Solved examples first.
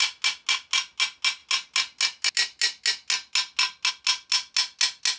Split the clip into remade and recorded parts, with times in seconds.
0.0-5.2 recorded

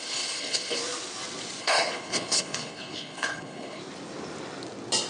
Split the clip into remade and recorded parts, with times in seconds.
0.0-0.8 remade; 0.8-1.6 recorded; 1.6-3.8 remade; 3.8-5.1 recorded